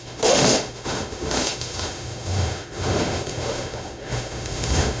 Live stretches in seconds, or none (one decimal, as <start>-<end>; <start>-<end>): none